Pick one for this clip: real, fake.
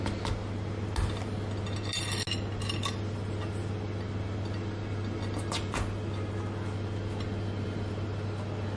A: real